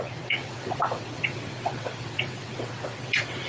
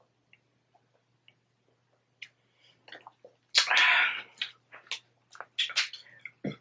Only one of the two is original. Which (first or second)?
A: second